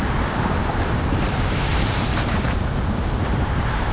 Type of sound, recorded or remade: remade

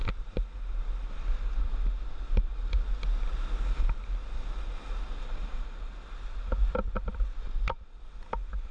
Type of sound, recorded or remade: recorded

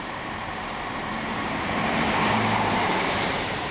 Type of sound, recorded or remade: remade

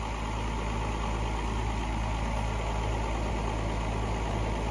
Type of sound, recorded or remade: recorded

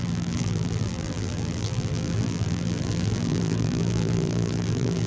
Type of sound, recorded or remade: remade